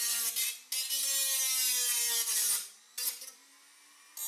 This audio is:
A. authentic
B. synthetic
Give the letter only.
A